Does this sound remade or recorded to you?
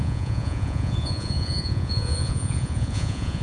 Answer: remade